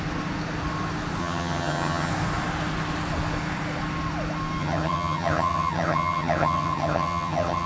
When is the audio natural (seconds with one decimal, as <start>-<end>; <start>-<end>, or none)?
0.0-1.2; 2.1-4.6